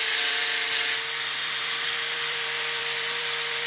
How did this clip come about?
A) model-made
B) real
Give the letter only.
A